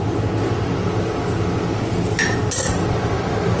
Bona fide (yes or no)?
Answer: yes